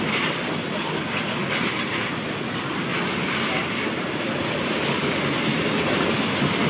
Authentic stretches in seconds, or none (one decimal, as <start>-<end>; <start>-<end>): 0.0-1.4; 2.1-6.7